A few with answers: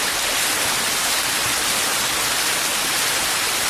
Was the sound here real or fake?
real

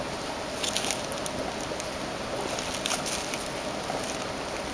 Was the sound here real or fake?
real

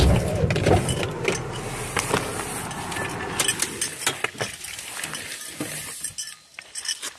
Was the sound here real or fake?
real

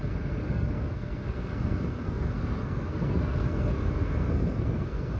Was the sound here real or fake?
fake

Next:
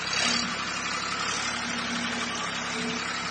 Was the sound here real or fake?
real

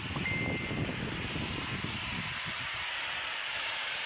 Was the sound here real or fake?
real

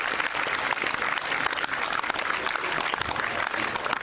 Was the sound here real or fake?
real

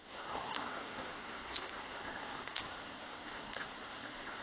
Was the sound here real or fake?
fake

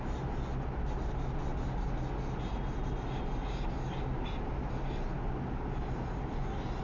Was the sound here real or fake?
real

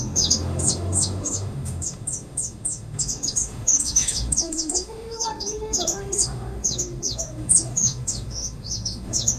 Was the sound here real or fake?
fake